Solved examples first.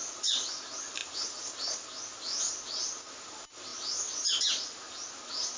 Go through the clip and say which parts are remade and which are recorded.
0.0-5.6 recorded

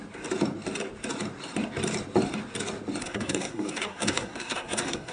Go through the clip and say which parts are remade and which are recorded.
0.0-3.0 recorded; 3.0-5.1 remade